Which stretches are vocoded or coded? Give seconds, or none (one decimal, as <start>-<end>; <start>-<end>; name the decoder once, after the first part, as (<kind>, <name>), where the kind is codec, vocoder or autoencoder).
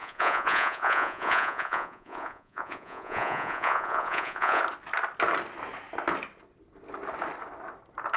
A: 0.0-4.6 (vocoder, Vocos)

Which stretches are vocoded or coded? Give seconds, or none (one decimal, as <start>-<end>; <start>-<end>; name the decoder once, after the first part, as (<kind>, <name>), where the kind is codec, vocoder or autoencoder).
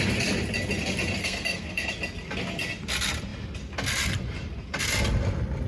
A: 1.2-1.9 (codec, SNAC)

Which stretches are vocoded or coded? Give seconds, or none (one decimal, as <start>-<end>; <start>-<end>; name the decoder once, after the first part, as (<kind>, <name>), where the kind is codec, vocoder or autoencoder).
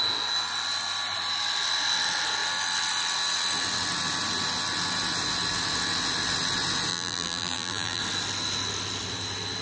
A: 6.9-8.0 (vocoder, BigVGAN v2)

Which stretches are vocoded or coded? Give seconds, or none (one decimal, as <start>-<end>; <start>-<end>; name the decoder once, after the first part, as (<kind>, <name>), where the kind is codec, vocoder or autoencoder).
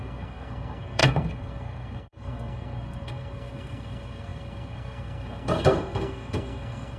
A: 0.0-7.0 (codec, SNAC)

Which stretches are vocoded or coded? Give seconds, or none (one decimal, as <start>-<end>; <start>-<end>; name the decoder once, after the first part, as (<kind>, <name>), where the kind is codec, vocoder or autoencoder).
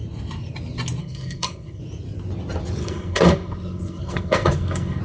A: 1.0-1.8 (codec, SNAC); 2.8-5.0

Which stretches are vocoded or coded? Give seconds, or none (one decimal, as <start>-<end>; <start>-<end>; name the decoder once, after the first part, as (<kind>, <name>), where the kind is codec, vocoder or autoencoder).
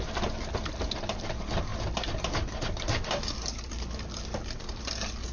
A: none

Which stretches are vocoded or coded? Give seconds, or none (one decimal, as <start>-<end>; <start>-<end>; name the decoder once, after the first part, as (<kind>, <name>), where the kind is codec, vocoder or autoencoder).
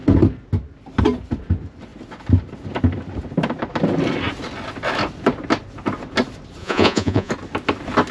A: 6.6-7.3 (vocoder, Vocos)